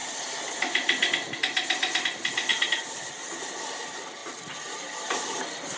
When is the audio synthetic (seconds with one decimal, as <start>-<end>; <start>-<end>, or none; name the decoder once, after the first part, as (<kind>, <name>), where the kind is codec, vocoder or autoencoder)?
2.5-3.3 (vocoder, BigVGAN v2); 4.2-5.8